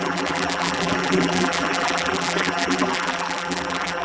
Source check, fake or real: fake